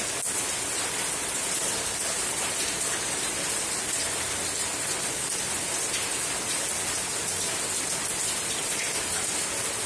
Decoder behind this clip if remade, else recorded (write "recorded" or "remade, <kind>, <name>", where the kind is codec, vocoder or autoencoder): recorded